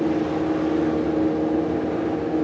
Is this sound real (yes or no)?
yes